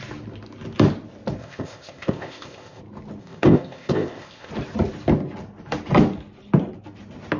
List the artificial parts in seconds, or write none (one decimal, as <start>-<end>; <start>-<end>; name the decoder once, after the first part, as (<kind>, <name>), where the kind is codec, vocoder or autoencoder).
1.4-2.8 (codec, ZipCodec); 3.2-4.5